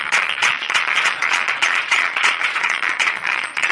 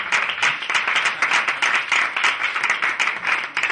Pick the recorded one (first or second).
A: second